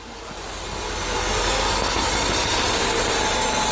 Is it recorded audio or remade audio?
recorded